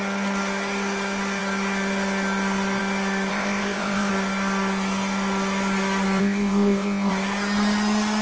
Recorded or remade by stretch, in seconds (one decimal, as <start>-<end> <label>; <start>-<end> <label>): 0.0-3.3 recorded; 3.3-4.1 remade; 4.1-6.2 recorded; 6.2-7.1 remade; 7.1-8.2 recorded